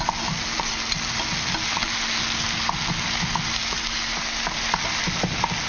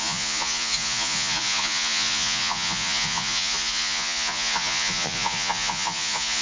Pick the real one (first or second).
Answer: first